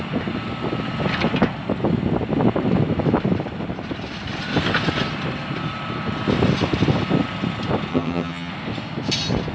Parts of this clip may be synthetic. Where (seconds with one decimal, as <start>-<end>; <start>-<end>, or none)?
7.9-8.5